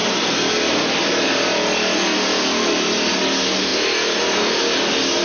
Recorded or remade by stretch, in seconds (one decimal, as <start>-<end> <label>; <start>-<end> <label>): 0.0-5.2 recorded